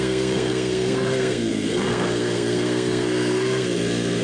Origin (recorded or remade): remade